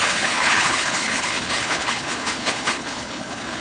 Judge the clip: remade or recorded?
remade